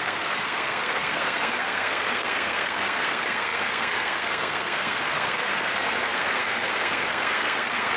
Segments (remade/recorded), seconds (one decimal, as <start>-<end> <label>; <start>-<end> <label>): 0.0-8.0 remade